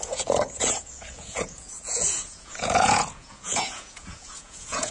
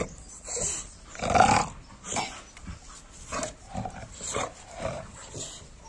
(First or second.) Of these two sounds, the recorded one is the second